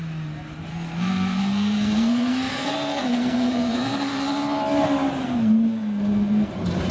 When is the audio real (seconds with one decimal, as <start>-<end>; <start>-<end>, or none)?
0.0-0.7; 4.1-5.2; 6.5-6.9